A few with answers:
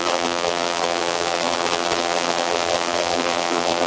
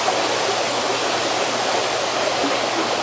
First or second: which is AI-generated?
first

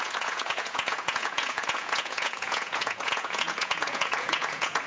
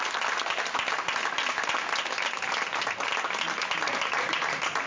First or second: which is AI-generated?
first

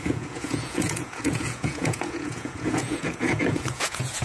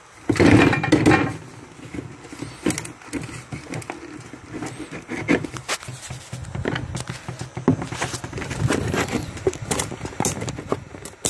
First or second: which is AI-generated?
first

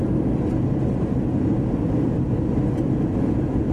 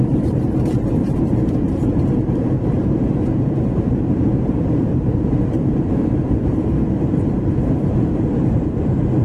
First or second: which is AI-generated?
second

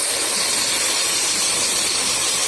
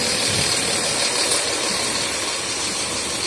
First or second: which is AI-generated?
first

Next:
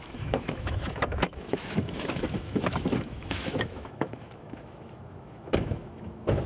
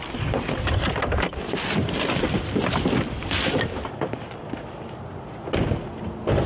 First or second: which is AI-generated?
first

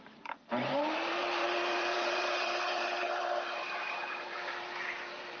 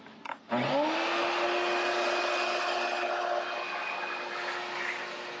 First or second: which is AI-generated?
first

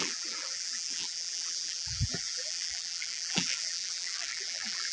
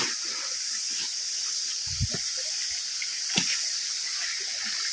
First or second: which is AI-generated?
first